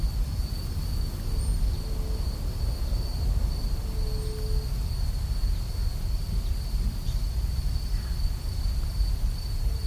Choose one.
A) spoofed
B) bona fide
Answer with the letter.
B